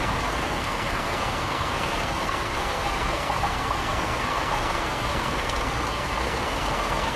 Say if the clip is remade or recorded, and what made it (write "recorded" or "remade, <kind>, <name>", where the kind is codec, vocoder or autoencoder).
remade, codec, SNAC